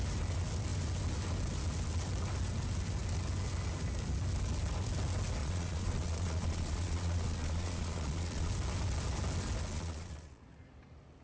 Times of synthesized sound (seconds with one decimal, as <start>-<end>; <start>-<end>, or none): 5.4-8.5; 9.7-10.4